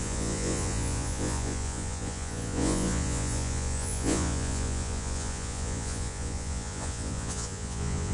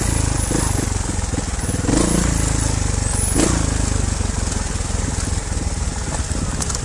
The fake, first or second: first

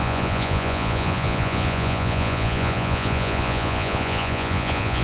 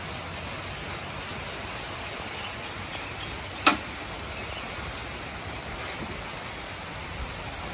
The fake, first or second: first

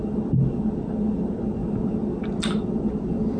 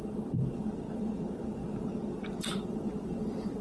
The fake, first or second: second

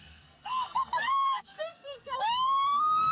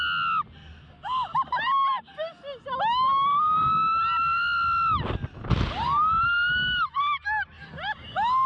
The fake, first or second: first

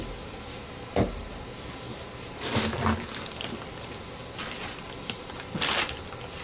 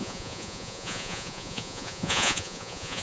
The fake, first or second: second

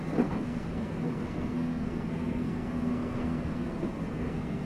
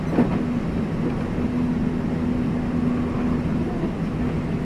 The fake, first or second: first